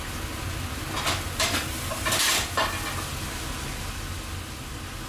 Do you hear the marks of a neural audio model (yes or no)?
no